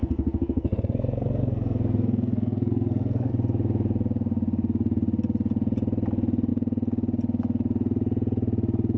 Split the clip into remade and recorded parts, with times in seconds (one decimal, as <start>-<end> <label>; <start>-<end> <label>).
0.0-3.3 remade; 3.3-9.0 recorded